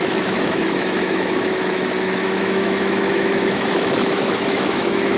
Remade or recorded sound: remade